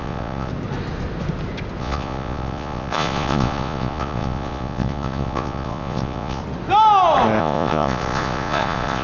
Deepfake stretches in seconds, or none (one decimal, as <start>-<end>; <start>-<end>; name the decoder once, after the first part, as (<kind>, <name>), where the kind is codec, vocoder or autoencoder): 0.0-0.5 (vocoder, Vocos); 1.8-6.4; 7.4-9.0